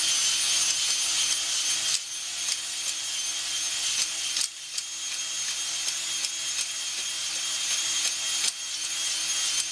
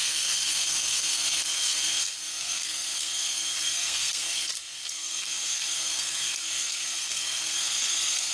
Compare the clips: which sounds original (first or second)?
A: first